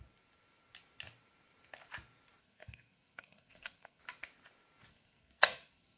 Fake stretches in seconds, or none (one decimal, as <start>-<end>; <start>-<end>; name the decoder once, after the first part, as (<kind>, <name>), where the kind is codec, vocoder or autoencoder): 2.4-4.0 (codec, SNAC); 4.9-6.0